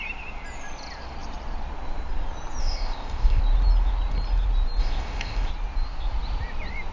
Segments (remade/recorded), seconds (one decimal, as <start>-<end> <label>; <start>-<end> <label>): 0.0-2.6 recorded; 2.6-3.4 remade; 3.4-4.8 recorded; 4.8-5.5 remade; 5.5-6.9 recorded